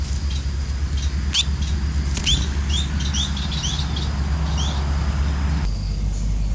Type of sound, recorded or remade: recorded